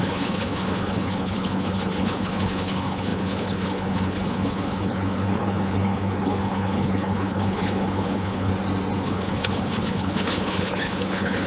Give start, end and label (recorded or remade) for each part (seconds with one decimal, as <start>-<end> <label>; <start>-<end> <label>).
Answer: 0.0-8.5 remade; 8.5-9.0 recorded; 9.0-11.5 remade

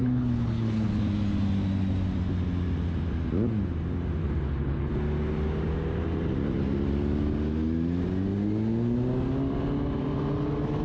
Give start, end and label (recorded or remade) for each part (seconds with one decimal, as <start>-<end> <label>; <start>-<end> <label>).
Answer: 0.0-1.0 remade; 1.0-4.2 recorded; 4.2-4.9 remade; 4.9-10.8 recorded

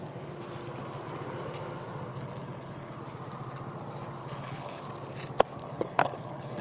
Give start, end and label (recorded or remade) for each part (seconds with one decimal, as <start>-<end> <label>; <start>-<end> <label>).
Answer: 0.0-2.1 recorded; 2.1-3.0 remade; 3.0-4.2 recorded; 4.2-4.8 remade; 4.8-5.6 recorded; 5.6-6.6 remade